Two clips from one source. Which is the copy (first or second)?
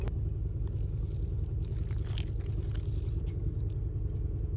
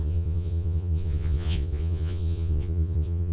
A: second